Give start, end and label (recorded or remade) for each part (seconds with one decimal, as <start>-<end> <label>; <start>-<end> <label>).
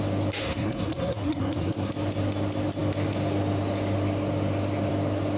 0.0-0.4 recorded; 0.4-1.9 remade; 1.9-5.4 recorded